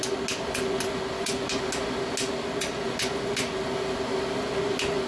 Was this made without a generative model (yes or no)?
yes